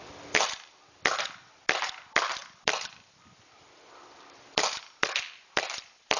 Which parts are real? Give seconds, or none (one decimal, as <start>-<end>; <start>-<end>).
0.0-6.2